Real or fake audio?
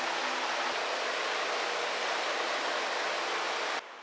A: real